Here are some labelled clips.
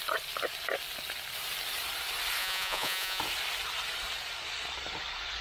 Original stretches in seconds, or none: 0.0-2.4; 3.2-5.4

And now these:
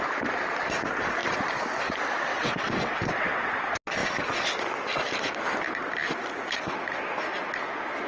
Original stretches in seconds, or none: 0.0-2.3; 3.5-8.1

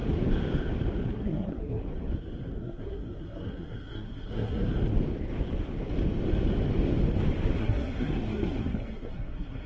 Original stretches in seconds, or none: 0.0-1.1; 1.8-2.6; 4.7-7.6

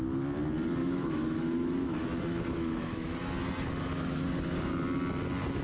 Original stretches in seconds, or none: 0.0-0.8; 3.3-5.6

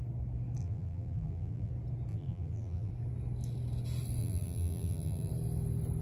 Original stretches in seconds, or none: 0.0-0.6; 1.7-2.1; 2.9-4.2; 5.3-6.0

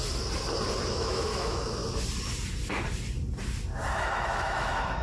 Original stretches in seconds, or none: 0.0-0.9; 1.8-3.9